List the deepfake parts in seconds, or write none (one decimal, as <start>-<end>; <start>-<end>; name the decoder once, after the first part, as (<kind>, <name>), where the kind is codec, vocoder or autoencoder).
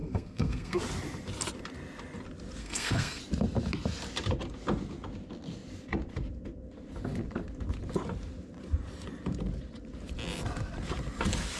0.0-0.8 (codec, SNAC); 2.6-3.2